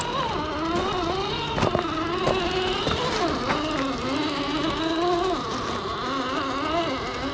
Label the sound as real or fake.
real